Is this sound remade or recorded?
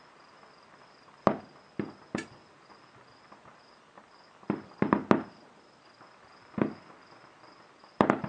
recorded